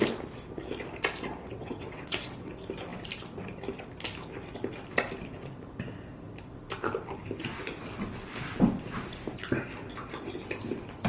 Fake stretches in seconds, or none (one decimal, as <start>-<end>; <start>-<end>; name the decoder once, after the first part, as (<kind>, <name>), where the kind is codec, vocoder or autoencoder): 1.4-2.5 (vocoder, WaveNeXt)